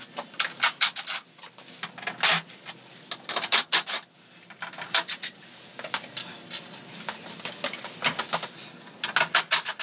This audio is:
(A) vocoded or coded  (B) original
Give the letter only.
B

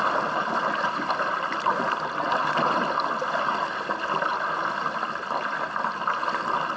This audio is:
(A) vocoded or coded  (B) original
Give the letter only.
B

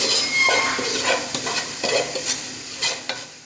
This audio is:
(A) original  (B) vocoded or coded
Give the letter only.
A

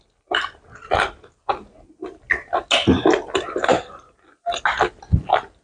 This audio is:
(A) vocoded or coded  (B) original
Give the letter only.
B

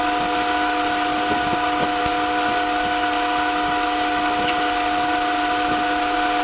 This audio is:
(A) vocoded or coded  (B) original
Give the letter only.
B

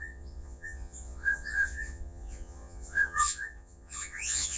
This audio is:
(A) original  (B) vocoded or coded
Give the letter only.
B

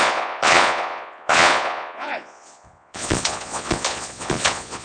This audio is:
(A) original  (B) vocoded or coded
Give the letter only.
B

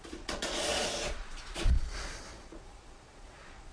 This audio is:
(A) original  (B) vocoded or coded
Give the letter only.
B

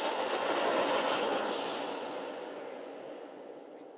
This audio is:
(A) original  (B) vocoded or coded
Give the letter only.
B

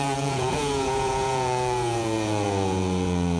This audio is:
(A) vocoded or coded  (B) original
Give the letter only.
A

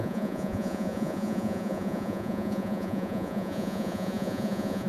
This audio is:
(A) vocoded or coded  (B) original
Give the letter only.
A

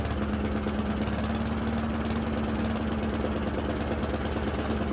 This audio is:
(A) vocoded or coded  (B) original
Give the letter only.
B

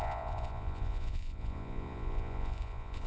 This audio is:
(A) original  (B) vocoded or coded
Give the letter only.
B